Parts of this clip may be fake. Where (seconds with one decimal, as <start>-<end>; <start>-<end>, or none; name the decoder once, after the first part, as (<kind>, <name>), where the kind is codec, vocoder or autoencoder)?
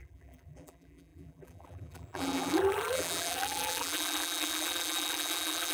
0.0-5.7 (vocoder, BigVGAN v2)